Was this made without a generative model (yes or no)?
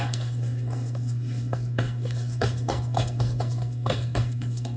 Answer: no